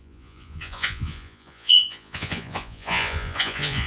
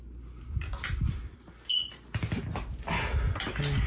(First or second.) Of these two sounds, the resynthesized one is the first